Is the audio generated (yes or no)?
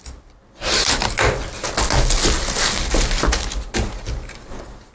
no